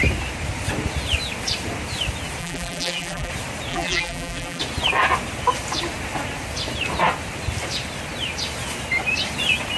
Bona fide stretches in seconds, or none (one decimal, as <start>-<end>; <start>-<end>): 0.0-2.4; 3.3-3.7; 4.6-9.8